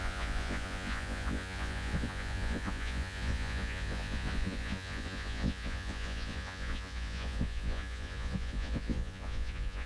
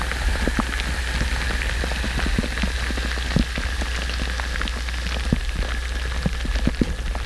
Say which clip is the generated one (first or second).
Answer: first